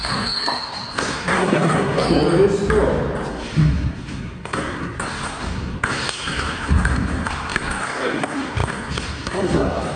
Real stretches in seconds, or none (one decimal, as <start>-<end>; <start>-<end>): 2.2-3.3

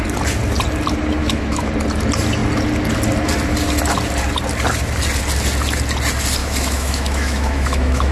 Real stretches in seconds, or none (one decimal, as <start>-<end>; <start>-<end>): 0.0-1.2; 1.7-6.4

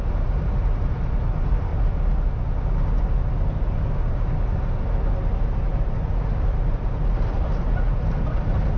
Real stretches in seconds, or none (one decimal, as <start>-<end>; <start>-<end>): 0.0-8.8